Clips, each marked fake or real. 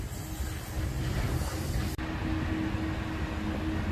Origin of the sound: real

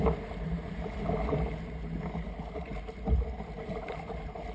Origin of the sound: real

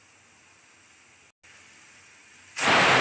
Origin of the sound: real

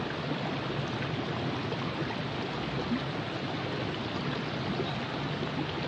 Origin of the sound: real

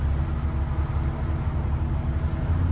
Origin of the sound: real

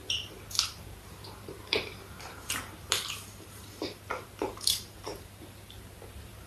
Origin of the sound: fake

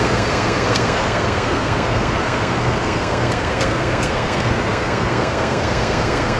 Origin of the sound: fake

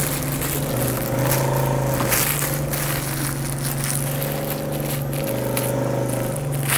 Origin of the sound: real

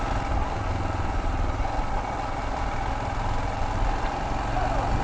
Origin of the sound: real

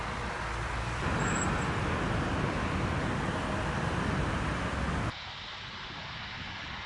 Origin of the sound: real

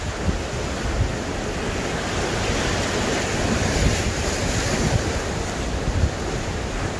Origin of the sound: real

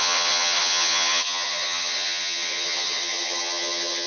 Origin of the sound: fake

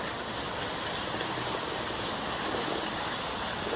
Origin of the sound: real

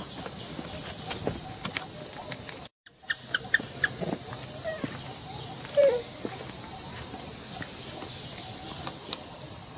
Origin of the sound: fake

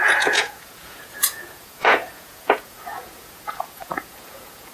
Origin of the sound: fake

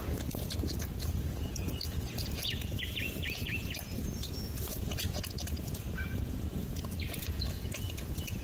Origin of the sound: fake